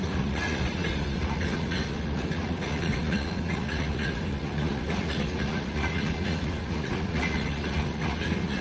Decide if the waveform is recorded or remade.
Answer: remade